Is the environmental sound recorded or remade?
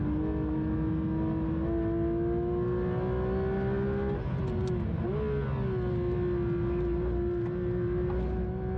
recorded